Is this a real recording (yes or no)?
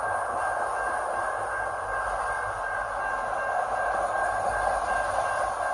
yes